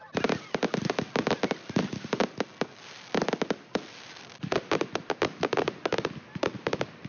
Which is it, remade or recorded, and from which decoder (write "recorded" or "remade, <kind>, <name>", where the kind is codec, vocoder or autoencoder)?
recorded